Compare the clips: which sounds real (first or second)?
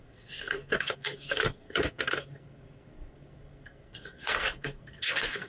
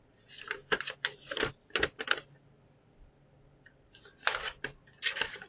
second